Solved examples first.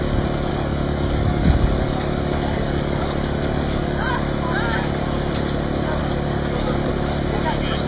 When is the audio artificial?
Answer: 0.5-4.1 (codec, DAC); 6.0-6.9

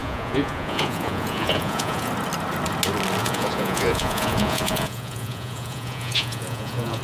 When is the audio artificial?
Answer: 0.0-2.1 (vocoder, Vocos); 3.2-7.0

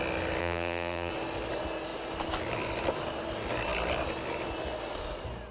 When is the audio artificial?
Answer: 0.4-1.1 (vocoder, BigVGAN v2)